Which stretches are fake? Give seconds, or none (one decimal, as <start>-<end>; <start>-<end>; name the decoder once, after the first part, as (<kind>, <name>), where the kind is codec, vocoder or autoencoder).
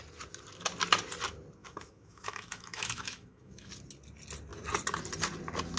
1.6-3.7 (autoencoder, DAC-VAE)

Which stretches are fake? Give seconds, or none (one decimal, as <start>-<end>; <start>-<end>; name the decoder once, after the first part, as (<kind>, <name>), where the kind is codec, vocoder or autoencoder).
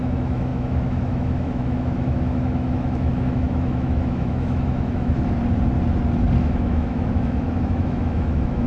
0.0-5.4 (autoencoder, DAC-VAE); 6.4-8.7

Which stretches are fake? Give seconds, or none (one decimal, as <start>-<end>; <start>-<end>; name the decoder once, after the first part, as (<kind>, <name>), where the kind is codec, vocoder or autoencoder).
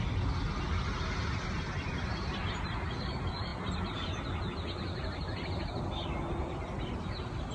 none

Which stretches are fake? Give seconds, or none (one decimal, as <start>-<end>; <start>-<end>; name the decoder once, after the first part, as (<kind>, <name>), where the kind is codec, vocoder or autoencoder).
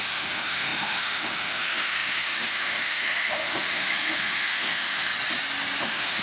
0.0-5.1 (autoencoder, DAC-VAE); 5.8-6.2